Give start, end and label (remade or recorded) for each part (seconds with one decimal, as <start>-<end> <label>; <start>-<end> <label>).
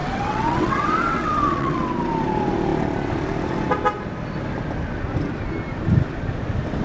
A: 0.0-1.9 remade; 1.9-6.8 recorded